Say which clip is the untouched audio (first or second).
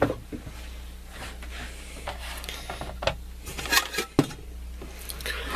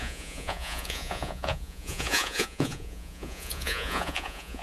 first